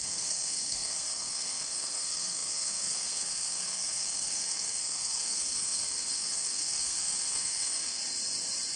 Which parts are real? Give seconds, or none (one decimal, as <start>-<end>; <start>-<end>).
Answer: 8.0-8.8